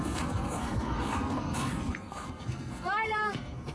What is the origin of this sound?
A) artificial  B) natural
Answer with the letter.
A